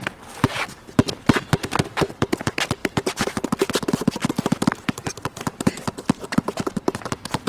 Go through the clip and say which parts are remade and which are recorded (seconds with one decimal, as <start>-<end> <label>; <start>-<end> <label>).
0.0-1.6 recorded; 1.6-2.1 remade; 2.1-7.5 recorded